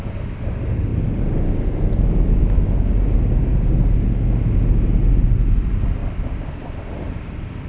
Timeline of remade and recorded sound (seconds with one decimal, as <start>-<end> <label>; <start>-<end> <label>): 0.0-0.9 remade; 0.9-5.5 recorded; 5.5-7.7 remade